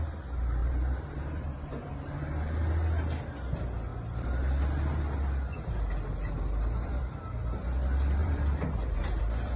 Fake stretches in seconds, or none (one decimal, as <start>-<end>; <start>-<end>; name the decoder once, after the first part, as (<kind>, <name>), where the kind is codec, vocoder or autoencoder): 0.6-1.6 (vocoder, BigVGAN v2); 8.2-9.2